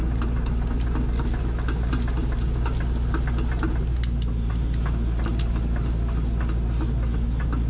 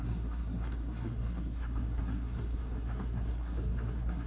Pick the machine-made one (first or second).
second